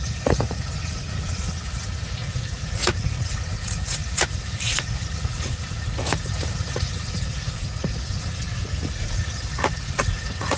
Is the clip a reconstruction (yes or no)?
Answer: yes